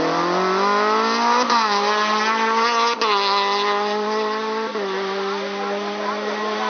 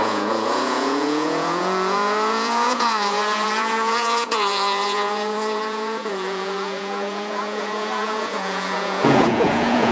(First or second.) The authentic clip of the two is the first